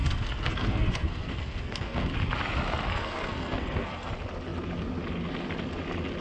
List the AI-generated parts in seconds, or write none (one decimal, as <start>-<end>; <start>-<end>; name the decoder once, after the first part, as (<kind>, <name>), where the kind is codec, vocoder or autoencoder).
0.0-2.1 (codec, SNAC); 2.9-4.1